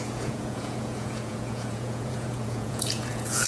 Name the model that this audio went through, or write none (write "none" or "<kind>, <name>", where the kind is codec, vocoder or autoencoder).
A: vocoder, Vocos